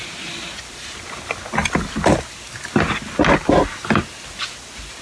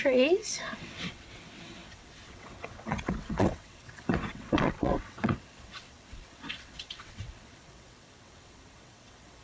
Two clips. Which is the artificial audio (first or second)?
second